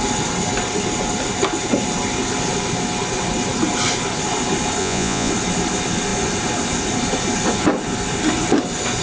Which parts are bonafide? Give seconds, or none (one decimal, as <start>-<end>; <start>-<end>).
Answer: 0.0-4.8; 5.3-9.0